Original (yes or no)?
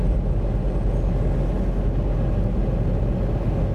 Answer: yes